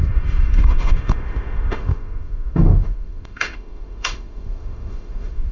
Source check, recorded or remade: remade